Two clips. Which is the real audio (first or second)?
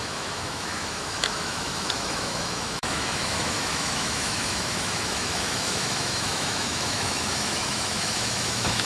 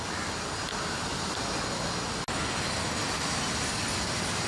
second